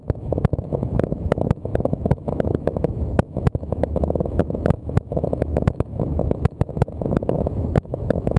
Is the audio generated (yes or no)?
yes